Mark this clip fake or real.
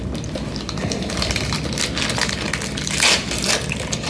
real